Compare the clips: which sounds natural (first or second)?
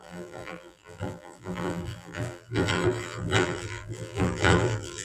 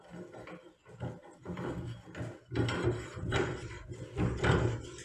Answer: second